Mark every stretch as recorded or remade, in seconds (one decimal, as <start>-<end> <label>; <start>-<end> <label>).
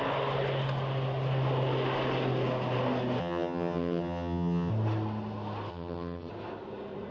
0.0-3.2 recorded; 3.2-4.7 remade; 4.7-5.7 recorded; 5.7-6.3 remade; 6.3-7.1 recorded